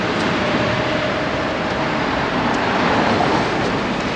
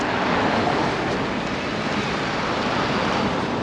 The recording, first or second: second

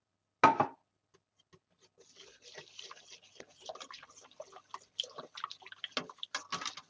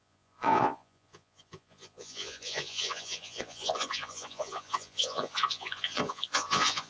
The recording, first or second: first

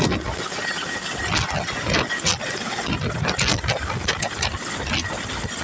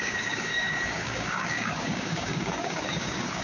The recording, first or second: first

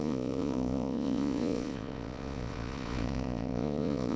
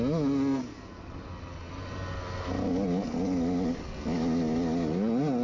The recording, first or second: second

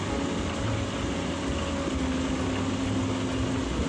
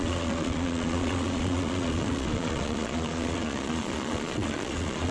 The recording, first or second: first